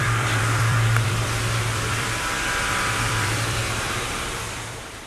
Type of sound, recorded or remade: remade